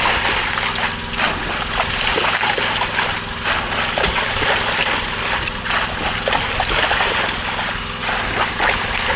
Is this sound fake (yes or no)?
no